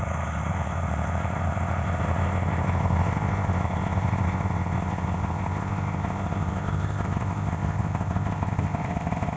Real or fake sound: fake